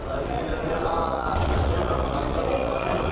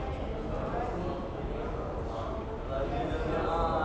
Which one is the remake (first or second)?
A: first